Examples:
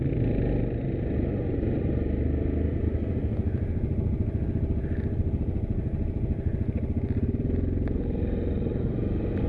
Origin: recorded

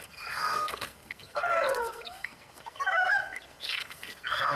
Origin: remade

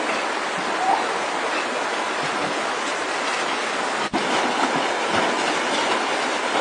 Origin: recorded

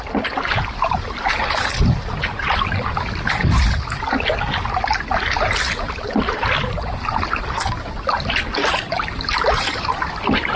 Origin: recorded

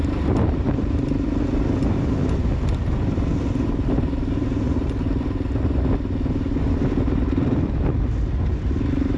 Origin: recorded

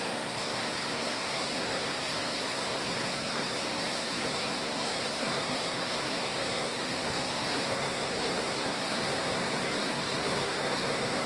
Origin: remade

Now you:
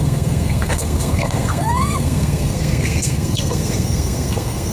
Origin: remade